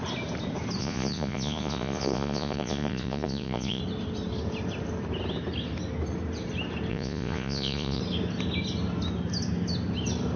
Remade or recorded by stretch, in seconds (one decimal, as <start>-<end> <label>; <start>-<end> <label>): 0.0-0.8 recorded; 0.8-3.8 remade; 3.8-6.9 recorded; 6.9-8.0 remade; 8.0-10.4 recorded